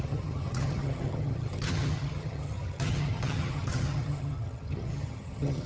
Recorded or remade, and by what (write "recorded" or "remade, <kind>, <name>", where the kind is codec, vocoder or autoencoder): remade, vocoder, HiFi-GAN